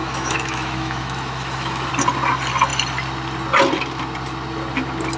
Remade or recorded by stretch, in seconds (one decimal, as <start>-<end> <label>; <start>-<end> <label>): 0.0-1.9 remade; 1.9-5.2 recorded